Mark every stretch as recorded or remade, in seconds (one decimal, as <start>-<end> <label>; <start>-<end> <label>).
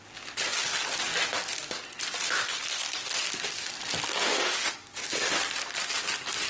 0.0-4.2 recorded; 4.2-4.7 remade; 4.7-6.5 recorded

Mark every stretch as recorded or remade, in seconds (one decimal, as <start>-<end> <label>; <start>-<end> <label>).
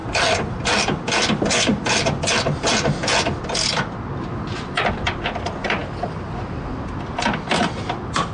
0.0-8.3 recorded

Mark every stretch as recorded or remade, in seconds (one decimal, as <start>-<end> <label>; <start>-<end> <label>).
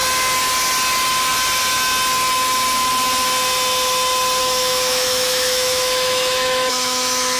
0.0-4.4 recorded; 4.4-7.4 remade